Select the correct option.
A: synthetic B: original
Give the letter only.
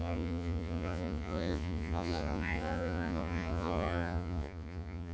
A